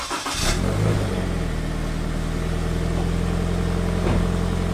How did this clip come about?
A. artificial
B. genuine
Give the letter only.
B